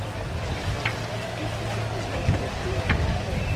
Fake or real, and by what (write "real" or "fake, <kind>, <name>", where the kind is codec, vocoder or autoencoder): real